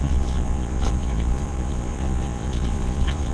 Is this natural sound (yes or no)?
no